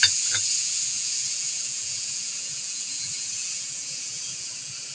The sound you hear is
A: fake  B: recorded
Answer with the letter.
A